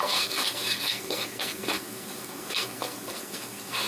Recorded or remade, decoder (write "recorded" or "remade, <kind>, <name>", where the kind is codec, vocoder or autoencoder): remade, codec, SNAC